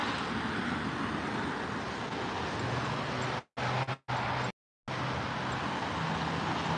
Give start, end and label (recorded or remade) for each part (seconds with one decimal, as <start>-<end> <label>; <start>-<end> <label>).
0.0-6.8 recorded